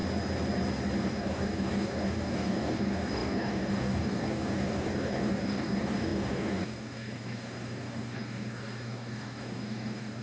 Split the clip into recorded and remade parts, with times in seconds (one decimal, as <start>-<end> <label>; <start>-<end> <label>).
0.0-1.1 recorded; 1.1-10.2 remade